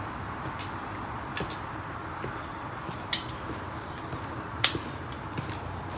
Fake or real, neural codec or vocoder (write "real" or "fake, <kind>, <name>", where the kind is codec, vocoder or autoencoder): real